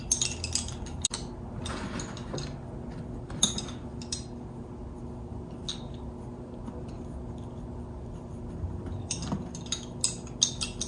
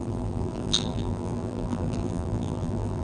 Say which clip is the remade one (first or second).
second